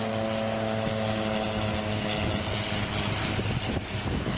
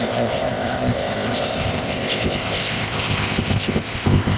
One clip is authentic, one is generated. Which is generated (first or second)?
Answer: second